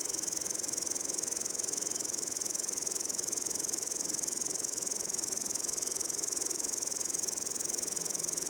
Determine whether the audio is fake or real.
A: fake